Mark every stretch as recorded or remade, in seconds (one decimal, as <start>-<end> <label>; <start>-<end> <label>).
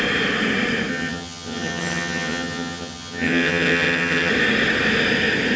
0.0-0.9 recorded; 0.9-4.3 remade; 4.3-5.6 recorded